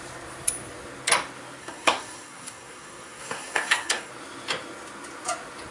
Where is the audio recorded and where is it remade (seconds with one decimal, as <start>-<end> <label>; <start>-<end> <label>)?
0.0-1.6 recorded; 1.6-4.1 remade; 4.1-5.7 recorded